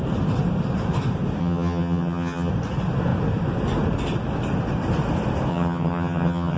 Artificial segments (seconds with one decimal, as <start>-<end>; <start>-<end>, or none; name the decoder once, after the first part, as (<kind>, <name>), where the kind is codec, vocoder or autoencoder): 1.4-2.5 (vocoder, HiFi-GAN); 5.5-6.6